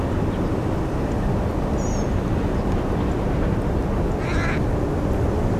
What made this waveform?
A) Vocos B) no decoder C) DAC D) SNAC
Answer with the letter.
B